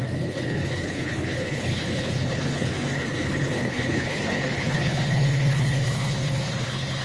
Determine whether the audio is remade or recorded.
remade